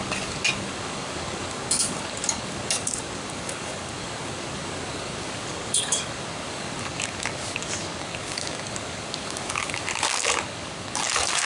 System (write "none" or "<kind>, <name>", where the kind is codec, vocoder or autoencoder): codec, DAC